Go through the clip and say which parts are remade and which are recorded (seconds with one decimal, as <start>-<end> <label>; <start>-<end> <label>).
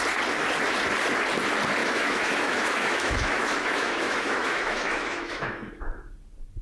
0.0-1.8 recorded; 1.8-5.8 remade; 5.8-6.6 recorded